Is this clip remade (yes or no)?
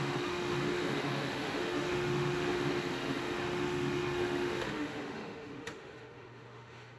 yes